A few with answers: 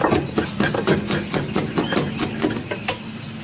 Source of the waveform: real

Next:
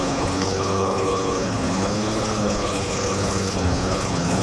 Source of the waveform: fake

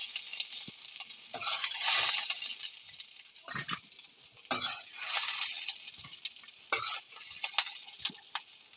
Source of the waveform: real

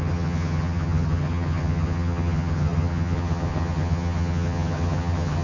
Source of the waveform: fake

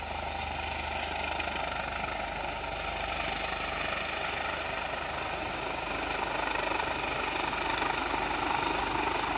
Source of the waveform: real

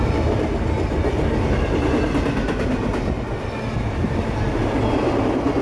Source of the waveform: real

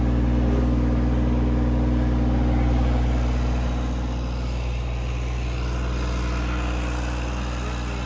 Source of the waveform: real